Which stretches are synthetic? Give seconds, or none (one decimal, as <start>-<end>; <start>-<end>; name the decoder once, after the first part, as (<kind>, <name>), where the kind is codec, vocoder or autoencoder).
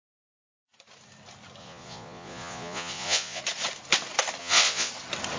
1.6-3.4 (vocoder, Vocos); 4.4-4.9